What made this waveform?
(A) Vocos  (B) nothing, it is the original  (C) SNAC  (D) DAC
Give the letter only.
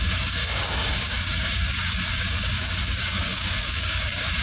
D